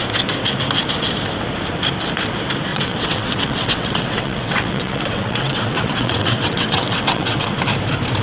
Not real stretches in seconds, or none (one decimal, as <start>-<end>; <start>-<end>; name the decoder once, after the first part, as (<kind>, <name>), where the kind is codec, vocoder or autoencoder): 2.7-7.6 (vocoder, WaveNeXt)

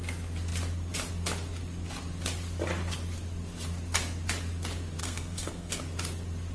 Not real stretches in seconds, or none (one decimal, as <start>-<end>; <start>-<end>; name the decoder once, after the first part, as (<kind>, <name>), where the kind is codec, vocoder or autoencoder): 5.0-5.8 (codec, SNAC)

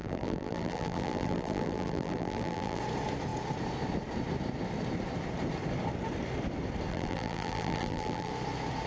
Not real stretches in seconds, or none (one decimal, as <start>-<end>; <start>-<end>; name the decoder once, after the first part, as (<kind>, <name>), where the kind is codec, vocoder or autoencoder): 0.0-2.8 (vocoder, BigVGAN v2); 6.9-8.3

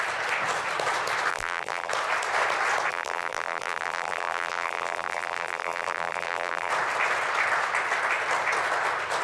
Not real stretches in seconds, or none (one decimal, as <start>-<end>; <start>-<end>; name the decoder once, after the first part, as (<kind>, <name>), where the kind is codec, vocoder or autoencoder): 1.3-1.9 (vocoder, BigVGAN v2); 2.9-6.7

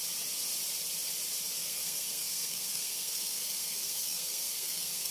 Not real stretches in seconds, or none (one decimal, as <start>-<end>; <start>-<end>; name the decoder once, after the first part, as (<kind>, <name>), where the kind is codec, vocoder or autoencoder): 1.6-5.1 (codec, SNAC)

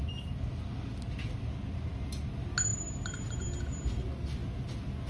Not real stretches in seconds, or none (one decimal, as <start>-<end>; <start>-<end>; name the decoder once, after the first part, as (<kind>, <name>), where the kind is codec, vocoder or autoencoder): none

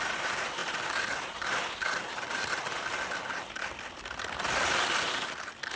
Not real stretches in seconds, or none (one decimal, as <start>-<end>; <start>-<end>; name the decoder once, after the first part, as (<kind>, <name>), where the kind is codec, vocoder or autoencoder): none

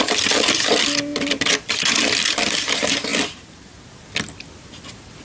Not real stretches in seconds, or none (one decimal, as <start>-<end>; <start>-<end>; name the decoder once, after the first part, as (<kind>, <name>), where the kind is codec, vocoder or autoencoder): 0.0-3.1 (vocoder, BigVGAN v2); 4.6-5.2